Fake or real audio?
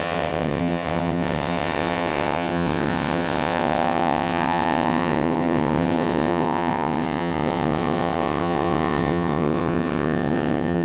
fake